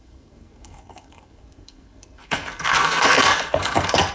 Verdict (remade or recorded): remade